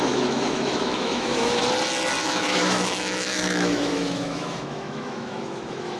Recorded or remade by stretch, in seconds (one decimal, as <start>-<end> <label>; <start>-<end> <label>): 0.0-1.6 remade; 1.6-2.2 recorded; 2.2-6.0 remade